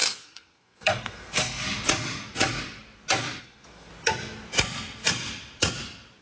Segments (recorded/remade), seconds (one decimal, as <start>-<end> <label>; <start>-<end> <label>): 0.0-1.6 remade; 1.6-3.4 recorded; 3.4-3.9 remade; 3.9-6.2 recorded